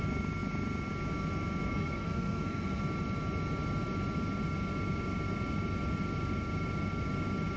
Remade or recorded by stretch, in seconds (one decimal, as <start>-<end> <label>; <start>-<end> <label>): 0.0-1.7 recorded; 1.7-2.8 remade; 2.8-7.6 recorded